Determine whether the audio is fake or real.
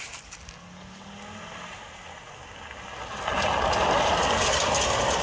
real